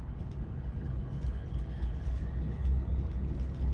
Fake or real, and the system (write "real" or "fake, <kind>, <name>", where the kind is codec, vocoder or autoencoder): fake, codec, HILCodec